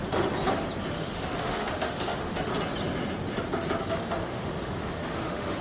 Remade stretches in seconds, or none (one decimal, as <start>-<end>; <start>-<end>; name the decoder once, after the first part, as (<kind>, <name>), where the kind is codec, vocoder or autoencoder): 0.9-2.5 (autoencoder, DAC-VAE); 3.8-5.6